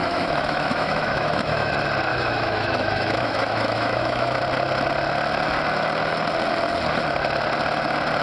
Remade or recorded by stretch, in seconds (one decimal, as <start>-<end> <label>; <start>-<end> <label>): 0.0-1.7 remade; 1.7-2.1 recorded; 2.1-4.4 remade; 4.4-8.2 recorded

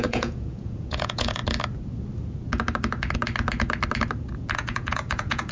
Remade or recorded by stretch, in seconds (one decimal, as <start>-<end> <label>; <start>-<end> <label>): 0.0-1.4 remade; 1.4-4.5 recorded; 4.5-5.5 remade

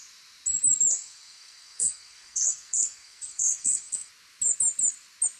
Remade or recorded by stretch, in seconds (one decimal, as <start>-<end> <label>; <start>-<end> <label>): 0.0-0.9 recorded; 0.9-4.1 remade; 4.1-5.4 recorded

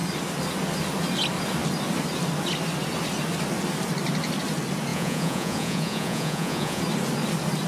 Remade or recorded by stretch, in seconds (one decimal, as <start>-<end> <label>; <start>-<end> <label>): 0.0-4.9 recorded; 4.9-6.8 remade; 6.8-7.7 recorded

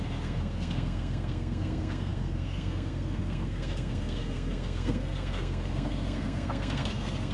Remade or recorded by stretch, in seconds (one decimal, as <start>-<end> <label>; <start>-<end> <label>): 0.0-7.3 remade

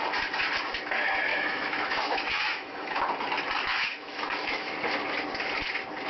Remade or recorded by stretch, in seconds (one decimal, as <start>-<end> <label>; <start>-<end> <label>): 0.0-1.3 recorded; 1.3-3.0 remade; 3.0-3.7 recorded; 3.7-4.7 remade; 4.7-6.1 recorded

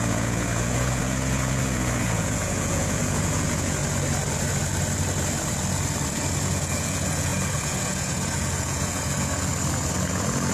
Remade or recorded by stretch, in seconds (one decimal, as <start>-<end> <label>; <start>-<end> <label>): 0.0-3.8 remade; 3.8-6.4 recorded; 6.4-9.5 remade; 9.5-10.1 recorded; 10.1-10.5 remade

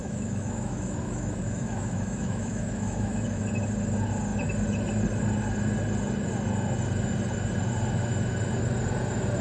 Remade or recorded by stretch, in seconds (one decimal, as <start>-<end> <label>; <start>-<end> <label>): 0.0-3.4 remade; 3.4-9.4 recorded